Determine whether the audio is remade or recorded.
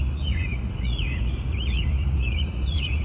remade